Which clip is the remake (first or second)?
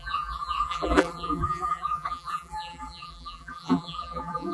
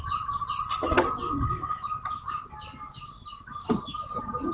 first